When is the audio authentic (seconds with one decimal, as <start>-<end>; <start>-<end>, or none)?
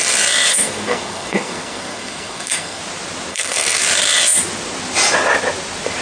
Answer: 0.0-0.5; 2.8-3.3; 3.8-6.0